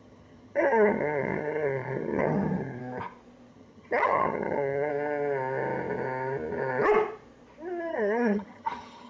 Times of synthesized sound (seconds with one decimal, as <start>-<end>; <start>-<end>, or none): 0.0-2.8; 3.5-4.9; 7.9-9.1